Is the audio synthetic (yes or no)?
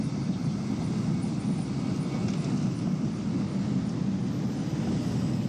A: no